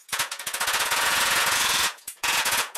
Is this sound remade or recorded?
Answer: remade